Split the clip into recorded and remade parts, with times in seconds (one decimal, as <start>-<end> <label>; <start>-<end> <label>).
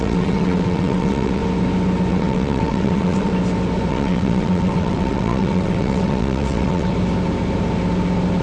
0.0-1.4 remade; 1.4-2.1 recorded; 2.1-3.3 remade; 3.3-3.9 recorded; 3.9-6.9 remade; 6.9-8.4 recorded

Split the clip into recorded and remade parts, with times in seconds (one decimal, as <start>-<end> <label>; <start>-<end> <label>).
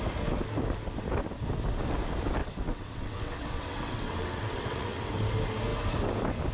0.0-2.4 recorded; 2.4-5.1 remade; 5.1-6.5 recorded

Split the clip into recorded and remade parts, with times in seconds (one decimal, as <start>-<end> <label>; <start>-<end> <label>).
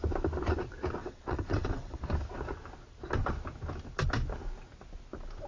0.0-1.0 recorded; 1.0-2.0 remade; 2.0-5.5 recorded